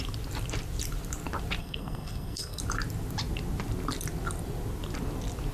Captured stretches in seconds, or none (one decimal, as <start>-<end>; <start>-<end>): 0.0-1.6; 2.6-5.5